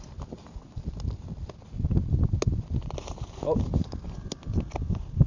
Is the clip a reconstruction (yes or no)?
no